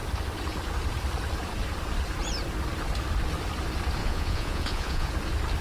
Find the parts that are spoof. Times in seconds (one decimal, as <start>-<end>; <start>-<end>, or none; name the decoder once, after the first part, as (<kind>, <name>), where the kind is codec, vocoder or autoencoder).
4.0-5.1 (vocoder, Vocos)